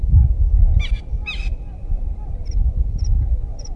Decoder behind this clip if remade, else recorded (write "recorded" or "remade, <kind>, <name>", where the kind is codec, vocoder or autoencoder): recorded